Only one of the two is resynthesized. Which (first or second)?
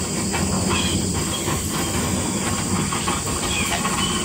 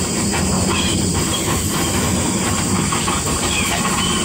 second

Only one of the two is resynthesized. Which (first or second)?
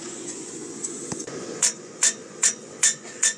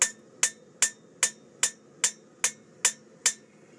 first